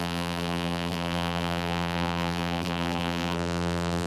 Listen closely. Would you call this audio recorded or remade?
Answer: remade